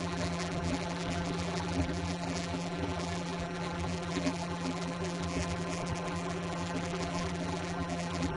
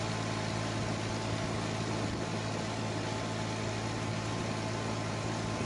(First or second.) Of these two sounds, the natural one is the second